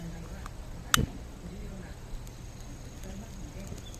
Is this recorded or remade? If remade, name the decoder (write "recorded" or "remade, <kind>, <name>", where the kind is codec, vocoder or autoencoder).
recorded